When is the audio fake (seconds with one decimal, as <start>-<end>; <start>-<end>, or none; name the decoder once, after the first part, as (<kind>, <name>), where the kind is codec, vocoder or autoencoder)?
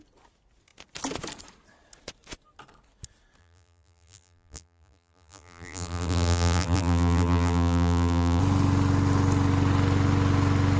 3.4-8.4 (vocoder, BigVGAN v2)